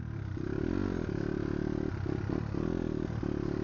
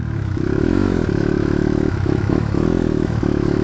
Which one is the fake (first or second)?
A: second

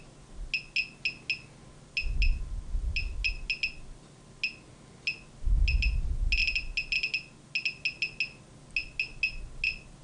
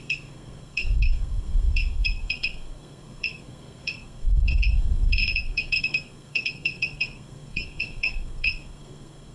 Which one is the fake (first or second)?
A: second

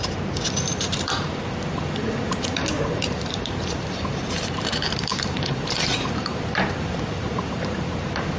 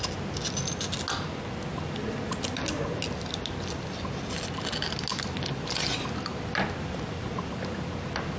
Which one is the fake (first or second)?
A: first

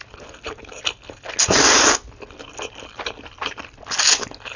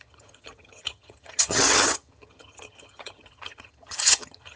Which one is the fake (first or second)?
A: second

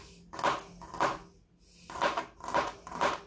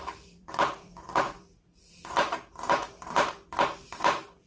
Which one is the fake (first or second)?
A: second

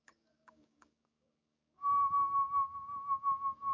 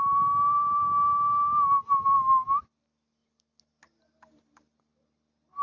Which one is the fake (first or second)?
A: first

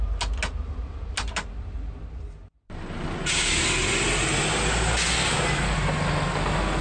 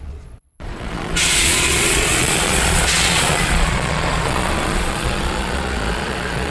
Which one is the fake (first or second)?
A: second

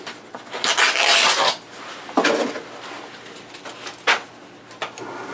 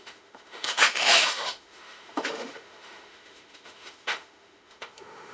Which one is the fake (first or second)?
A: second